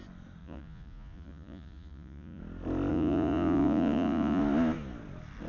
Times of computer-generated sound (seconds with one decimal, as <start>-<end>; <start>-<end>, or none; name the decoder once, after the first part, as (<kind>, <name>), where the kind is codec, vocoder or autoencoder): 0.4-2.4 (vocoder, Vocos); 2.9-4.4